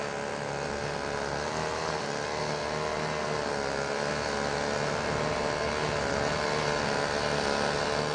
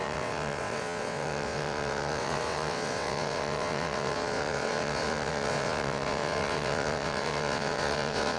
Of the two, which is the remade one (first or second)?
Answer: second